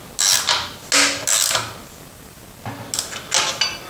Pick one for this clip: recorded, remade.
recorded